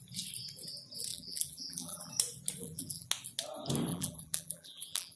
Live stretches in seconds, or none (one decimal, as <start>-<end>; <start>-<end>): 0.0-1.1; 2.1-2.6; 3.1-3.9